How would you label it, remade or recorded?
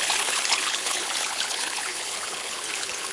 remade